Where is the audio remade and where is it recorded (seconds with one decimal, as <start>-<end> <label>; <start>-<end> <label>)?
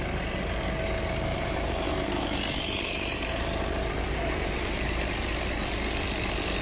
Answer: 0.0-1.3 recorded; 1.3-5.2 remade; 5.2-6.6 recorded